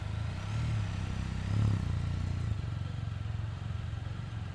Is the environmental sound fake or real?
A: real